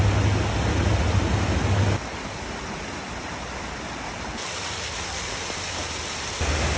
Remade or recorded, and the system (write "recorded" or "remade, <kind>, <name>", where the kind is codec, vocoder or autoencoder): recorded